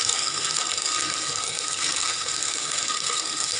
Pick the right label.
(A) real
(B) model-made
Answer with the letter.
B